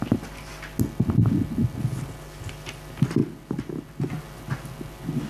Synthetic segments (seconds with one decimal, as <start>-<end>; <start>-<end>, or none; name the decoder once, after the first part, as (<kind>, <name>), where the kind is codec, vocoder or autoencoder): none